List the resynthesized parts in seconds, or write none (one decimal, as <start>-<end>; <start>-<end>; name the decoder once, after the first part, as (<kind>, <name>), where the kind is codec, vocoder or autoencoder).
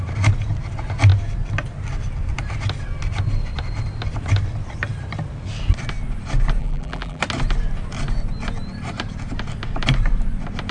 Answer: 6.6-7.2 (vocoder, BigVGAN v2)